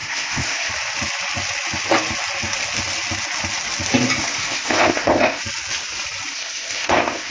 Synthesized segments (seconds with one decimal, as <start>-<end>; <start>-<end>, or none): 0.0-0.7; 4.2-5.4; 6.3-7.3